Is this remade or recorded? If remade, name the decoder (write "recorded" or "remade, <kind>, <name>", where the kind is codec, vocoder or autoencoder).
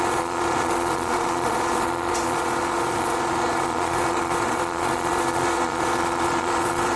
remade, vocoder, Vocos